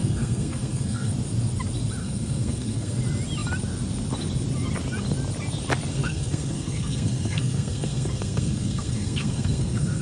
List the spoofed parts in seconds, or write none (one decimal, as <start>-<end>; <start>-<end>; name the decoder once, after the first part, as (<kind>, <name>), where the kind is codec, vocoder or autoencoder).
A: 0.0-1.1 (codec, SNAC); 2.0-3.0; 5.9-10.0

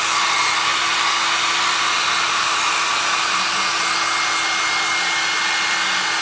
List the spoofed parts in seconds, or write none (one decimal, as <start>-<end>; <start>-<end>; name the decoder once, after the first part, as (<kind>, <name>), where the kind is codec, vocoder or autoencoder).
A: none

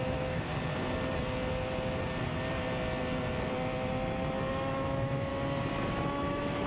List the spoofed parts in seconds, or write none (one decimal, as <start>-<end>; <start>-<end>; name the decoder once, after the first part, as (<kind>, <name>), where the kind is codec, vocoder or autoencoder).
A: 0.0-0.5 (autoencoder, DAC-VAE); 4.5-5.3; 5.9-6.7

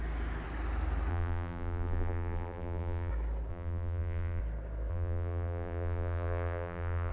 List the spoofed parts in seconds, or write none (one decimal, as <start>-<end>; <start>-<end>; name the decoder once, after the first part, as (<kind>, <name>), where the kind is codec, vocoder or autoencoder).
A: 1.1-3.1 (vocoder, BigVGAN v2); 3.5-4.4; 4.9-7.1